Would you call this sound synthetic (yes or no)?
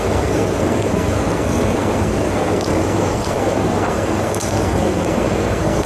yes